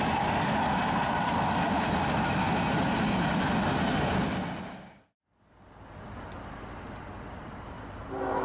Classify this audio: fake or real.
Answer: real